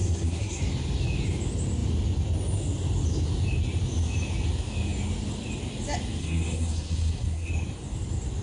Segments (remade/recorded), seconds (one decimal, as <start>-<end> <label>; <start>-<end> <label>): 0.0-0.6 remade; 0.6-6.2 recorded; 6.2-7.5 remade; 7.5-8.4 recorded